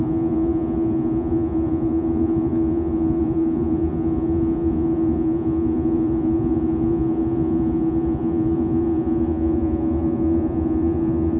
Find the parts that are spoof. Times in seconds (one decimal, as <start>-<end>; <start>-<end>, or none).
0.0-11.4